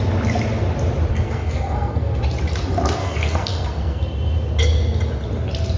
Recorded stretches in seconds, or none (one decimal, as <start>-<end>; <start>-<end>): 0.0-1.1; 2.2-3.0; 4.0-5.8

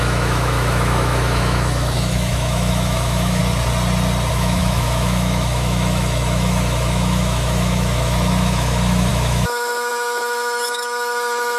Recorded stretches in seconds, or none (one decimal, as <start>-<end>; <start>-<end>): 3.4-4.3

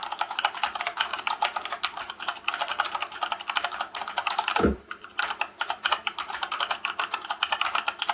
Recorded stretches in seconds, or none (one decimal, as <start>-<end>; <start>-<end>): 0.0-1.1; 2.1-2.7; 3.2-4.0; 6.5-8.1

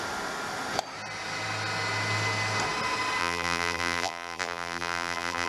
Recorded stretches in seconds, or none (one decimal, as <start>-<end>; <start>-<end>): 0.0-3.2

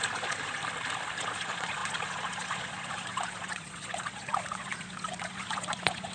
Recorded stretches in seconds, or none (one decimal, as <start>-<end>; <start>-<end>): 0.6-1.2

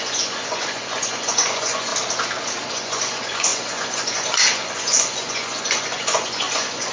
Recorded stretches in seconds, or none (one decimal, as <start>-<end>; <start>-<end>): 1.9-2.7